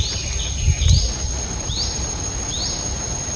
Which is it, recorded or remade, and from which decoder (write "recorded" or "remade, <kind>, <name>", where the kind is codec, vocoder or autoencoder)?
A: recorded